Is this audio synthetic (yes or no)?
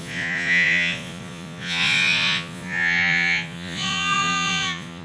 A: yes